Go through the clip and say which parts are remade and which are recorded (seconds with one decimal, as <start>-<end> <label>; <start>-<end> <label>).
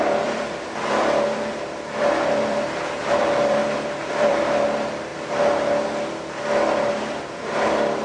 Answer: 0.0-3.6 remade; 3.6-4.1 recorded; 4.1-5.1 remade; 5.1-6.9 recorded; 6.9-8.0 remade